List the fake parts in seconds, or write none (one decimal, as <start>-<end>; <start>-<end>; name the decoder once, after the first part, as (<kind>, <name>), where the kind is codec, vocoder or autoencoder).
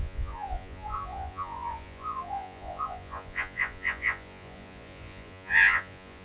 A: 0.0-6.2 (vocoder, Vocos)